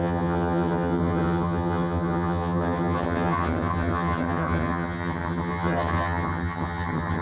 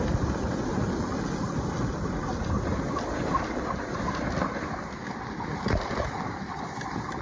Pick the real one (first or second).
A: second